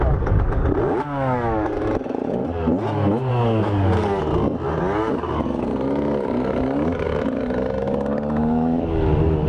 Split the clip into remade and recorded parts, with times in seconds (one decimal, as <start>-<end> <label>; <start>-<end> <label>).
0.0-2.4 remade; 2.4-3.3 recorded; 3.3-4.3 remade; 4.3-4.8 recorded; 4.8-9.5 remade